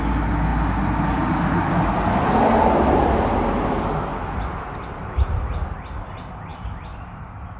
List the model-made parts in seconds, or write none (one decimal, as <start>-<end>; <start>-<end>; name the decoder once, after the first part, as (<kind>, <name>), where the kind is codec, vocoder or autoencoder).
none